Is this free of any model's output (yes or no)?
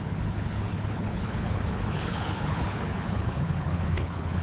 no